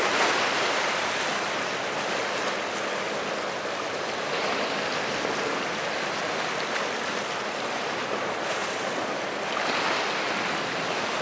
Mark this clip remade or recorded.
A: recorded